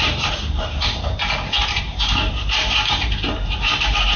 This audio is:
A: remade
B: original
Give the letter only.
A